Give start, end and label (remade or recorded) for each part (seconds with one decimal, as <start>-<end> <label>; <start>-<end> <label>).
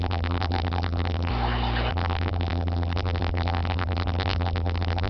0.0-1.3 remade; 1.3-1.9 recorded; 1.9-5.1 remade